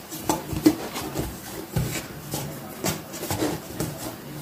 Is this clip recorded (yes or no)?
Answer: no